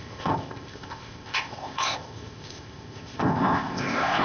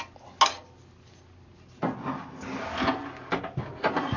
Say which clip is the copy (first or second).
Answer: first